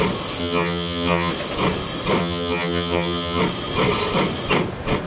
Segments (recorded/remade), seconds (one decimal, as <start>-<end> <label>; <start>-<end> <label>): 0.0-0.4 recorded; 0.4-1.3 remade; 1.3-2.2 recorded; 2.2-3.4 remade; 3.4-5.1 recorded